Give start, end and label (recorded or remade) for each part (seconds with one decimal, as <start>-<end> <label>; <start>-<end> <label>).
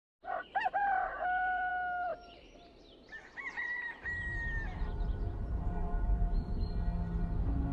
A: 0.0-0.8 recorded; 0.8-1.7 remade; 1.7-2.1 recorded; 2.1-6.7 remade; 6.7-7.7 recorded